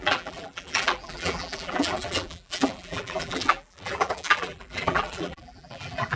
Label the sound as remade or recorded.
remade